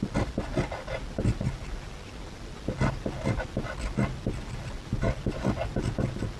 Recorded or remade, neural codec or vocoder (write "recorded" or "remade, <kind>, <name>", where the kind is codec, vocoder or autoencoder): recorded